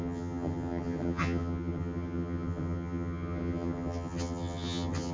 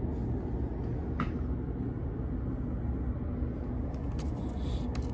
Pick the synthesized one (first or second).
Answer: first